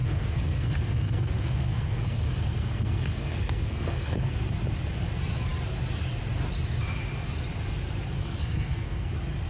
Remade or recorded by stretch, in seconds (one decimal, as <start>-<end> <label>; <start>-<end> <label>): 0.0-4.3 remade; 4.3-8.2 recorded; 8.2-9.1 remade; 9.1-9.5 recorded

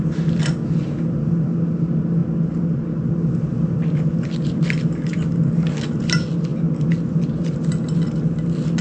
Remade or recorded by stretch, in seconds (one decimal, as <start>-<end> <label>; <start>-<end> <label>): 0.0-8.8 recorded

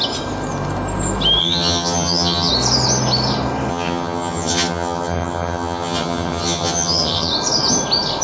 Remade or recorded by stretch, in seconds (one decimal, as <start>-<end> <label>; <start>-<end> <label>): 0.0-1.4 recorded; 1.4-2.5 remade; 2.5-3.7 recorded; 3.7-7.3 remade; 7.3-8.2 recorded

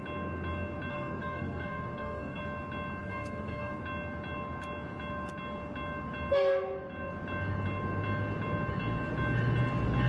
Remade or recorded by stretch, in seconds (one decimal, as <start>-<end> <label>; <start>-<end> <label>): 0.0-0.9 recorded; 0.9-2.4 remade; 2.4-3.0 recorded; 3.0-3.8 remade; 3.8-10.1 recorded

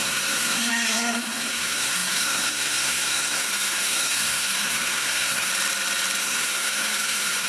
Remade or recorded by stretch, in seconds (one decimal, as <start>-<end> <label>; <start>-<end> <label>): 0.0-5.5 remade; 5.5-6.2 recorded; 6.2-7.5 remade

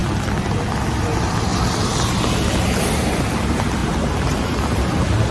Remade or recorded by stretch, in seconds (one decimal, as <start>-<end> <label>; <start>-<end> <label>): 0.0-5.3 recorded

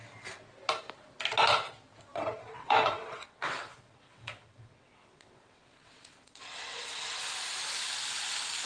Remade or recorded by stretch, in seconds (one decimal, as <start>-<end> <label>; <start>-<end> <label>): 0.0-2.1 recorded; 2.1-7.2 remade; 7.2-8.7 recorded